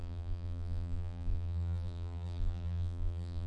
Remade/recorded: remade